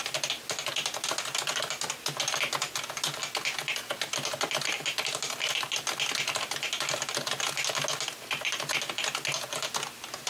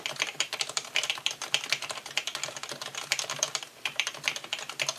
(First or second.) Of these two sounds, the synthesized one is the second